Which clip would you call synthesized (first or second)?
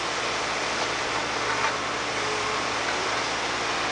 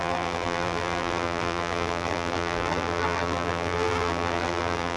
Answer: second